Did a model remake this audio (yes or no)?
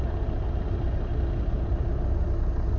no